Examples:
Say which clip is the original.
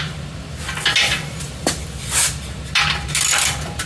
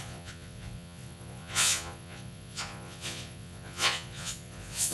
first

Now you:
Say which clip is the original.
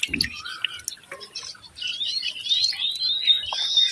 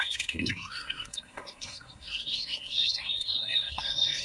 first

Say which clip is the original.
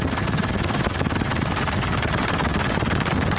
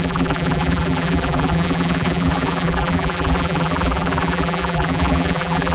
first